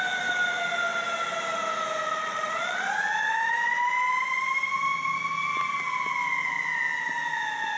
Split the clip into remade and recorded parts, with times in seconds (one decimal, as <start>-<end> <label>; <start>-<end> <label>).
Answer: 0.0-2.2 recorded; 2.2-2.9 remade; 2.9-7.8 recorded